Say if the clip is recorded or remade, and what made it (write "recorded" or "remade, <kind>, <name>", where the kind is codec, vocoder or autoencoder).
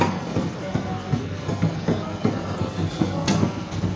remade, codec, SNAC